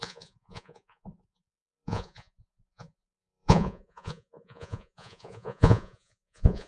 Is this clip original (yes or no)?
no